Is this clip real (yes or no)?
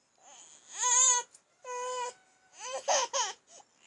yes